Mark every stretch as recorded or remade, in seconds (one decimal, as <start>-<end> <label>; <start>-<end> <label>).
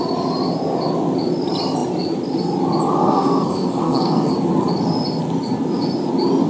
0.0-3.0 recorded; 3.0-4.3 remade; 4.3-6.5 recorded